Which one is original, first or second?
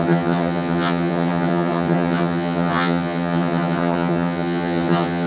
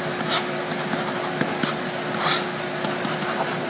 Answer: second